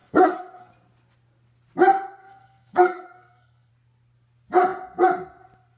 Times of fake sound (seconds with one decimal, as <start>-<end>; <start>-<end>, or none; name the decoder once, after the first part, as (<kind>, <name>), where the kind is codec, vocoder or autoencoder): 0.0-0.7 (codec, SNAC); 2.2-3.7

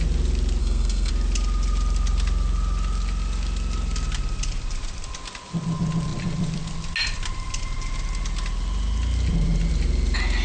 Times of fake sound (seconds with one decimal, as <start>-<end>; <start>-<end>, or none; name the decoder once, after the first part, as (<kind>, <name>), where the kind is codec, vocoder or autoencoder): 0.6-1.1 (codec, SNAC)

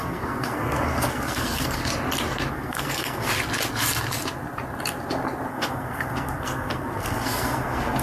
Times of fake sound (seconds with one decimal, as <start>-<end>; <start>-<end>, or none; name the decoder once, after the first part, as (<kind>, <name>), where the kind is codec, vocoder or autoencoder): 0.0-1.8 (codec, SNAC); 2.5-3.3; 5.5-8.0

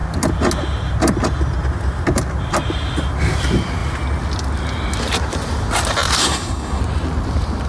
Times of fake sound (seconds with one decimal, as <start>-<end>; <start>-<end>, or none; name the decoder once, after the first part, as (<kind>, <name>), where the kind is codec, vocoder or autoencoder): 6.2-6.8 (codec, SNAC)

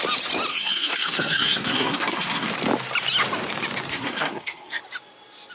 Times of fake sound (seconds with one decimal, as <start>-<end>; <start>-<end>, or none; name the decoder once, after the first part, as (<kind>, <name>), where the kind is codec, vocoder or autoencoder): 0.5-2.5 (codec, SNAC); 3.9-4.8

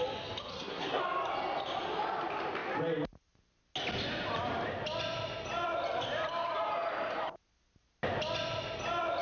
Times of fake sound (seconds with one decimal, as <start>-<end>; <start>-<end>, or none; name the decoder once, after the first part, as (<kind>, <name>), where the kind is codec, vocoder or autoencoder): 0.5-1.0 (codec, SNAC)